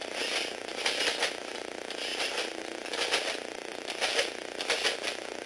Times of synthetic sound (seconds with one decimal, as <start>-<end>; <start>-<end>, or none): none